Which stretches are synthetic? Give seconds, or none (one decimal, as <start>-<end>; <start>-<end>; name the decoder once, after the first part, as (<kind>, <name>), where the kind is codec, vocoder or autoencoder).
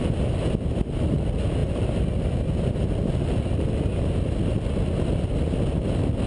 none